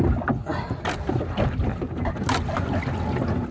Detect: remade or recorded recorded